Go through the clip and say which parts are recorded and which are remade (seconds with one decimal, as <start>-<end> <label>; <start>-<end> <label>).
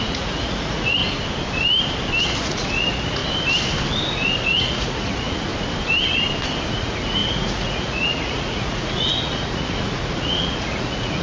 0.0-1.0 remade; 1.0-2.4 recorded; 2.4-3.2 remade; 3.2-4.1 recorded; 4.1-5.5 remade; 5.5-6.7 recorded; 6.7-11.2 remade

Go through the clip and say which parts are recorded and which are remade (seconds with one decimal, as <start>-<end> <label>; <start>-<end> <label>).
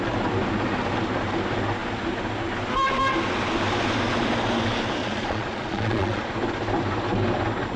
0.0-5.0 recorded; 5.0-6.3 remade; 6.3-7.8 recorded